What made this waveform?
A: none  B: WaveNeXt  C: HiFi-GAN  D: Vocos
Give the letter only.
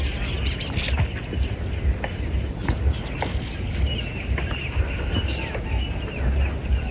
A